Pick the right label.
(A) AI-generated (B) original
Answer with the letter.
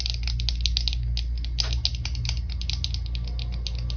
B